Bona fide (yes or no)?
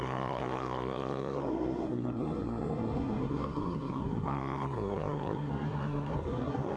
no